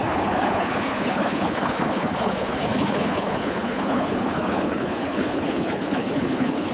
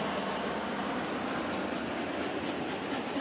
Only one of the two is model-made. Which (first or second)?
first